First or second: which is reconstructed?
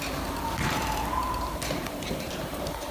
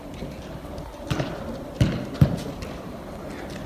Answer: first